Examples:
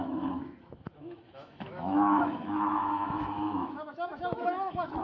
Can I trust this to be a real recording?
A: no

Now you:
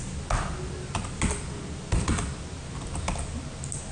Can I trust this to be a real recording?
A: yes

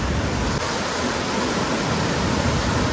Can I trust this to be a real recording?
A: yes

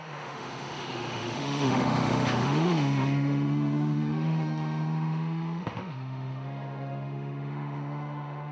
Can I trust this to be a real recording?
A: no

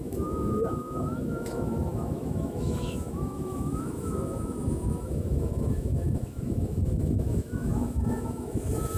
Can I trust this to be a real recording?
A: no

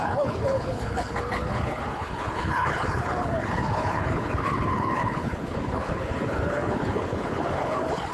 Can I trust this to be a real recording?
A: no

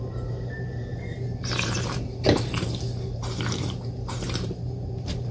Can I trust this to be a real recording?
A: no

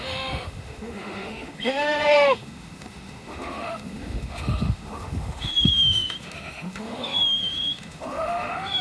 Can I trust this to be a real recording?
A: no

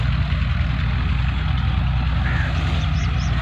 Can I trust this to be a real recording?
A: yes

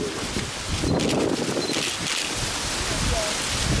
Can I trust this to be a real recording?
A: yes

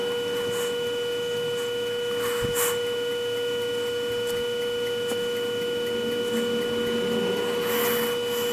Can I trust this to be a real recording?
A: yes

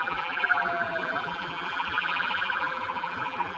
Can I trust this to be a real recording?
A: no